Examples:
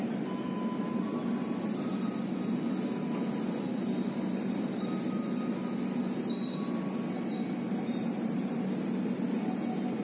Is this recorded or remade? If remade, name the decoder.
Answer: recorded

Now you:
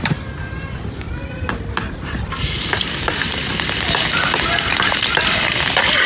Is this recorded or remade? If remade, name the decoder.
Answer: recorded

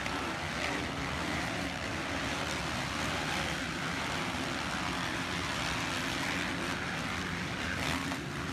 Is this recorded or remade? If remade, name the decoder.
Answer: recorded